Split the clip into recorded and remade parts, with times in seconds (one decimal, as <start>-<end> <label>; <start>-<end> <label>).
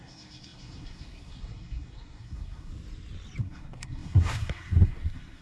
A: 0.0-2.7 remade; 2.7-3.4 recorded; 3.4-5.4 remade